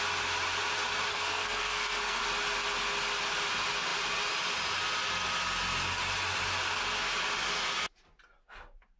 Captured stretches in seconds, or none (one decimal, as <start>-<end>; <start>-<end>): 0.0-1.1; 2.2-9.0